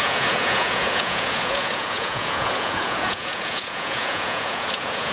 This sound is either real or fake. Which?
fake